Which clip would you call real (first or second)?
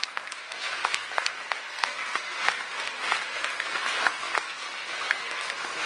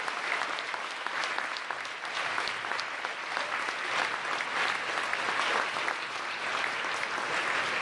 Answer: second